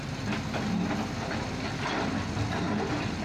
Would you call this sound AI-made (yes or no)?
no